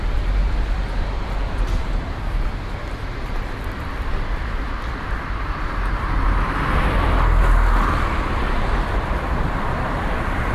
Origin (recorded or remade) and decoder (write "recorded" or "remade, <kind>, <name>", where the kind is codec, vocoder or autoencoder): remade, vocoder, BigVGAN v2